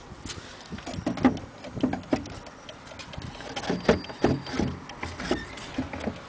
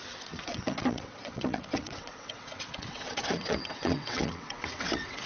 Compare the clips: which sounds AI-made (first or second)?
second